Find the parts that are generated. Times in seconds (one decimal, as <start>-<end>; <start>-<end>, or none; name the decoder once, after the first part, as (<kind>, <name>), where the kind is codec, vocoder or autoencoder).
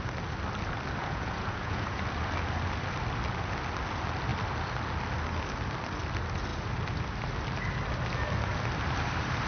1.0-2.0 (vocoder, Vocos)